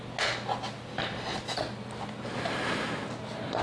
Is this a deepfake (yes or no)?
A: no